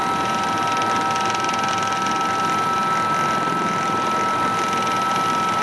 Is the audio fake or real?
real